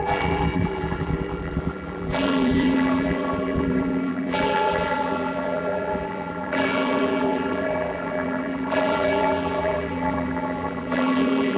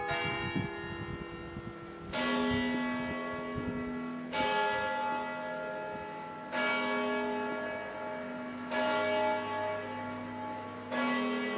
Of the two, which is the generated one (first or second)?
first